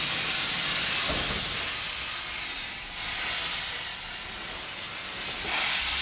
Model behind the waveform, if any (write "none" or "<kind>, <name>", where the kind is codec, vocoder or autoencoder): none